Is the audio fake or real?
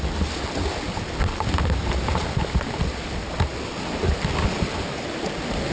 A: real